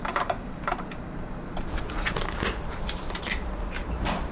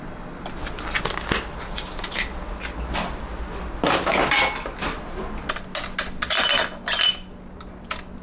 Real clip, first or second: second